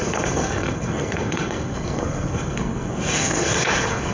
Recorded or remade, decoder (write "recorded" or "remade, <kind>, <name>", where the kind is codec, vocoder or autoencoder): remade, codec, SNAC